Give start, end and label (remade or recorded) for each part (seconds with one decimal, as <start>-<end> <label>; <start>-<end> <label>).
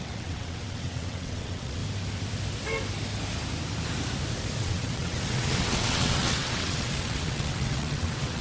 0.0-1.8 remade; 1.8-4.6 recorded; 4.6-8.4 remade